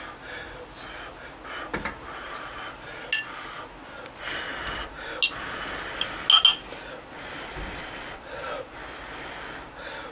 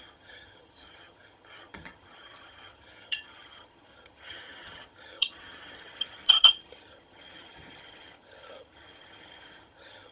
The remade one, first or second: second